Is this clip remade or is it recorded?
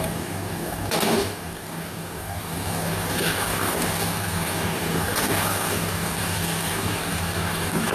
remade